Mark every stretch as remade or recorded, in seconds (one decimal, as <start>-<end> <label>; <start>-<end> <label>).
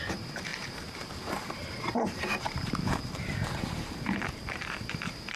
0.0-5.4 remade